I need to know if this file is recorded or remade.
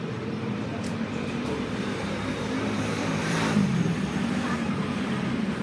remade